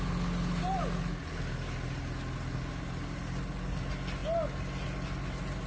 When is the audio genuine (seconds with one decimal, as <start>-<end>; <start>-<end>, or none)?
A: 0.0-5.7